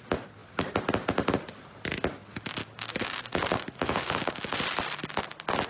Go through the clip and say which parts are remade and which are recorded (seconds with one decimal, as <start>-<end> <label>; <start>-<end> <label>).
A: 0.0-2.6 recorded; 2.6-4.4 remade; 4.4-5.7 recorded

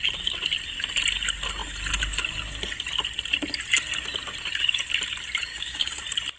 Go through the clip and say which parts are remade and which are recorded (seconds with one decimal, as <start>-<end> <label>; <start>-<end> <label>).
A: 0.0-5.5 recorded; 5.5-6.0 remade; 6.0-6.4 recorded

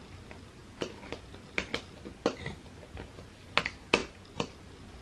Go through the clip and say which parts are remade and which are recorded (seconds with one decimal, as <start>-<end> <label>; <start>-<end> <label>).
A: 0.0-5.0 recorded

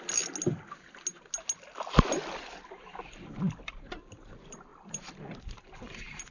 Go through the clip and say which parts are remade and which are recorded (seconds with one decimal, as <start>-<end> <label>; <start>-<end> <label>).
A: 0.0-6.3 recorded

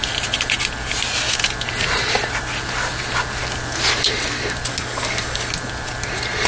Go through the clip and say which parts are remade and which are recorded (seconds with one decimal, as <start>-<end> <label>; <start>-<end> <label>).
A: 0.0-4.7 recorded; 4.7-5.5 remade; 5.5-6.5 recorded

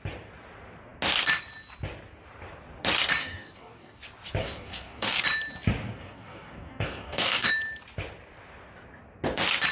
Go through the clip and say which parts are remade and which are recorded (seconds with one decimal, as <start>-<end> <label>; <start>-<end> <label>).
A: 0.0-3.2 recorded; 3.2-4.0 remade; 4.0-4.4 recorded; 4.4-5.2 remade; 5.2-6.0 recorded; 6.0-7.5 remade; 7.5-9.7 recorded